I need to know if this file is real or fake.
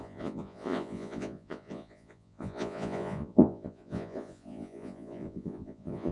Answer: fake